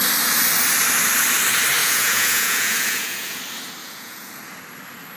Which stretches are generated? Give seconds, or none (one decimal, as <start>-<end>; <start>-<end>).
1.8-3.4; 3.8-4.4